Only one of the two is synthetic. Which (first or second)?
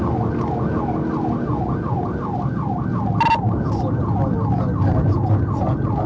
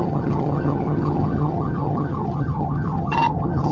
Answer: second